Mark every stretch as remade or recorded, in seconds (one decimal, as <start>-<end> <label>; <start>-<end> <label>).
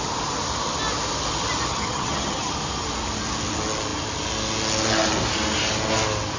0.0-1.7 recorded; 1.7-2.5 remade; 2.5-6.4 recorded